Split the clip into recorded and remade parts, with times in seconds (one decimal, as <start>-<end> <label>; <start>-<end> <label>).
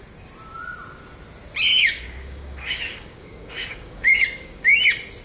0.0-1.7 recorded; 1.7-4.8 remade; 4.8-5.2 recorded